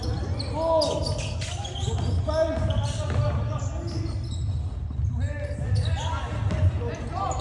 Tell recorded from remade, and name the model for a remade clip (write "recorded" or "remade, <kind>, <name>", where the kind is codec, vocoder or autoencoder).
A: recorded